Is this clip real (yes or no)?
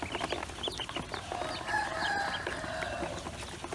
yes